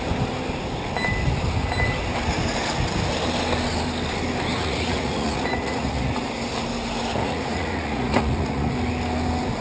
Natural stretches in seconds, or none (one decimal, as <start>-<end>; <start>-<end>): 0.0-4.5; 6.3-7.2; 8.7-9.6